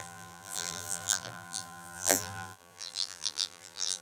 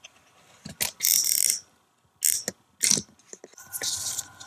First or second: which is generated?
first